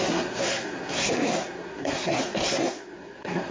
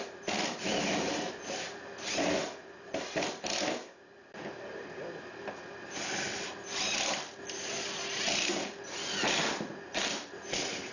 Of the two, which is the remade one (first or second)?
first